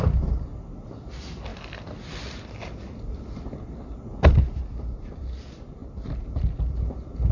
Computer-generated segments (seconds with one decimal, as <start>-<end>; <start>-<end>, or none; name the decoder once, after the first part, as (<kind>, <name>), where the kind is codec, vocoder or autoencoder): 0.0-1.5 (vocoder, BigVGAN v2); 4.6-5.8; 6.8-7.3